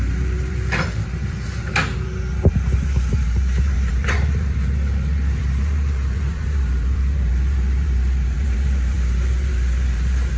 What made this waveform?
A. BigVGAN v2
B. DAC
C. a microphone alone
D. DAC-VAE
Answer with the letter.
A